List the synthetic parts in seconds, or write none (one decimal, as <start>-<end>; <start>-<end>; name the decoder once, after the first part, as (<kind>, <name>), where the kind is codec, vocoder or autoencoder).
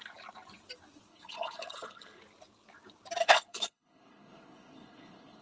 1.1-2.2 (codec, HILCodec); 3.2-5.4